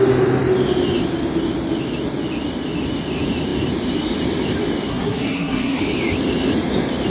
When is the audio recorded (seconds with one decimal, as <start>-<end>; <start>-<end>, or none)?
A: 0.0-4.9; 5.8-7.1